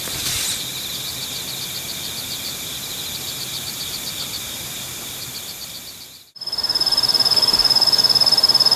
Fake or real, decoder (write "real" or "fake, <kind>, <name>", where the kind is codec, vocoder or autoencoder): real